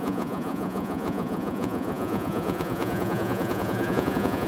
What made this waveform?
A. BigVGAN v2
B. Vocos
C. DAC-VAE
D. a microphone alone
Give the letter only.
B